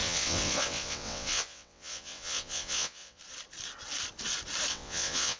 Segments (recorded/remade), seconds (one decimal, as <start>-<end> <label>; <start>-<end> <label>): 0.0-3.2 remade; 3.2-4.7 recorded; 4.7-5.4 remade